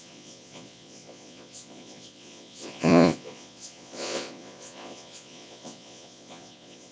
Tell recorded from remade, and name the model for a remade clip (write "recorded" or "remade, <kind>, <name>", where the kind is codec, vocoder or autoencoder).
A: remade, vocoder, Vocos